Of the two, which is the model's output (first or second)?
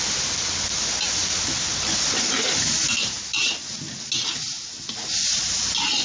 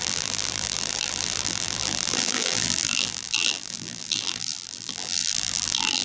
second